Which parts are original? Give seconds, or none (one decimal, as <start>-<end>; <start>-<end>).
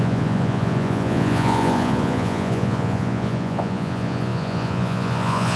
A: none